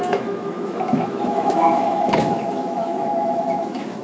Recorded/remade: remade